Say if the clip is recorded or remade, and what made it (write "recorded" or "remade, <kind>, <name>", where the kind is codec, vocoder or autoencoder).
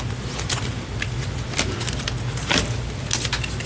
recorded